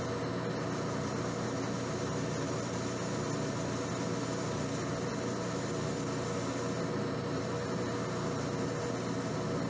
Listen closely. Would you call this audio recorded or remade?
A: recorded